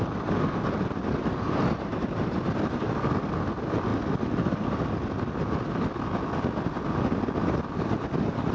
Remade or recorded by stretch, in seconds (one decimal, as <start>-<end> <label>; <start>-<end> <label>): 0.0-8.5 recorded